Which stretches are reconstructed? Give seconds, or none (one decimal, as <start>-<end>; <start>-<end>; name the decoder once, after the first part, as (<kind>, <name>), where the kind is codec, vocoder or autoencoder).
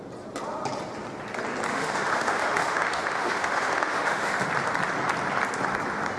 1.7-4.4 (autoencoder, DAC-VAE)